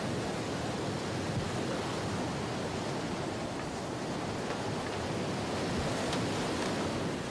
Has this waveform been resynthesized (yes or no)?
no